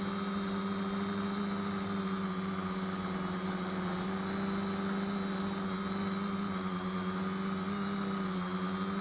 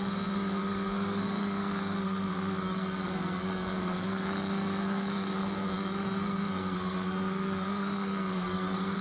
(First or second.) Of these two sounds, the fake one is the second